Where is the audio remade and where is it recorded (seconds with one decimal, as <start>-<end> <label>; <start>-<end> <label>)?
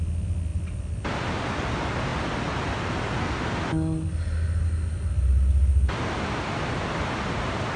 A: 0.0-7.8 recorded